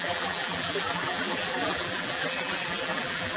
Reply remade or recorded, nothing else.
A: remade